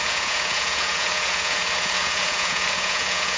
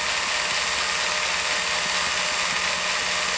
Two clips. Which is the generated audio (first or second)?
first